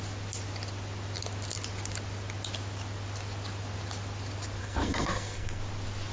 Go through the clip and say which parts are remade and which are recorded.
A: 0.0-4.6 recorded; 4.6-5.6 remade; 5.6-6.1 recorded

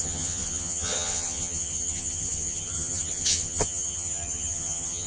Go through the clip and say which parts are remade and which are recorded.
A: 0.0-5.1 remade